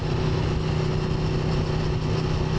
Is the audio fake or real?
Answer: real